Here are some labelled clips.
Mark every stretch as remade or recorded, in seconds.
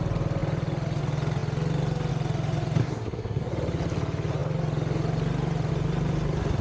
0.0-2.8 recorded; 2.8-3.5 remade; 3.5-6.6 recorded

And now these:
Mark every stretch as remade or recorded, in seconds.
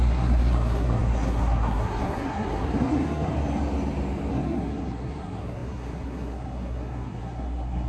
0.0-3.3 remade; 3.3-4.3 recorded; 4.3-7.9 remade